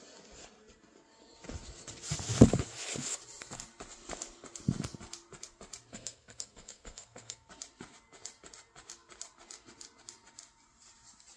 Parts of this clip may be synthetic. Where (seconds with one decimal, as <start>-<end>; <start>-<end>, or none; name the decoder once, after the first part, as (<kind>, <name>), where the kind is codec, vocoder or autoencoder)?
5.9-7.5 (codec, SNAC)